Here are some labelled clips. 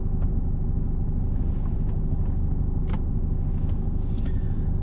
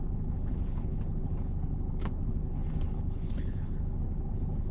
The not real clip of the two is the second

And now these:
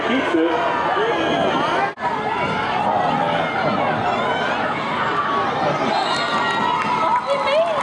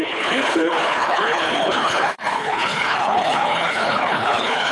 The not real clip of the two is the second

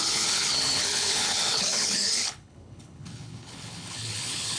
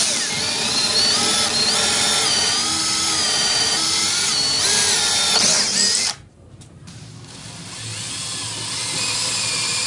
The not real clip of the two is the first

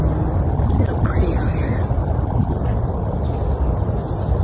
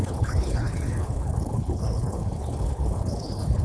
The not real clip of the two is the second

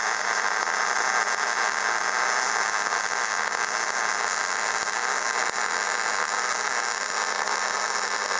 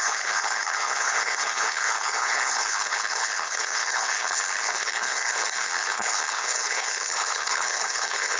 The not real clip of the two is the second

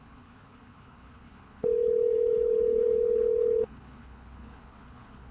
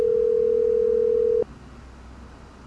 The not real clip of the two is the first